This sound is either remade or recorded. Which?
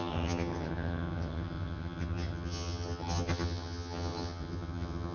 remade